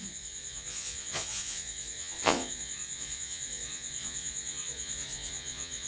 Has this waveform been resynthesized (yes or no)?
yes